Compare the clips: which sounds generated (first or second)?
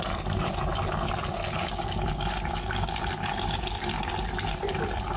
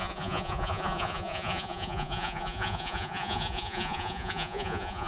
second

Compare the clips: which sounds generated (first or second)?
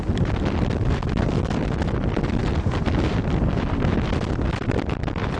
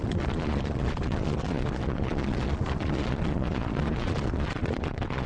second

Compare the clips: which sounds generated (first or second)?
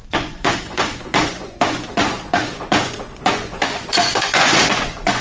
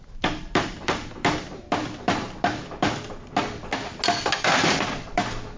first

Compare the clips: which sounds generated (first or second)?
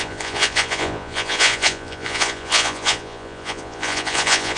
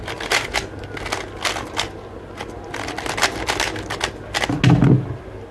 first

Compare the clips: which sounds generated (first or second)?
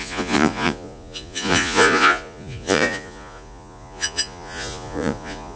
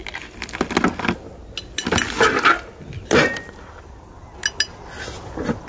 first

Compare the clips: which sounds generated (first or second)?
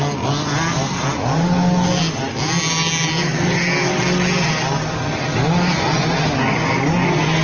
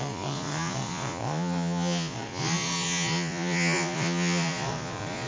second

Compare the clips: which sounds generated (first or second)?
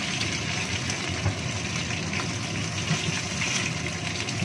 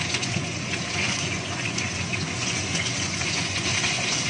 second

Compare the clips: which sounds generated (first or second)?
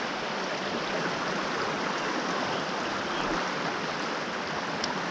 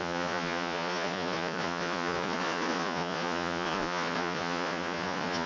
second